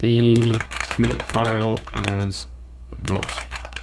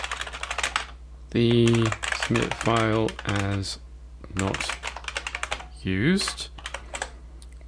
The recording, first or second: second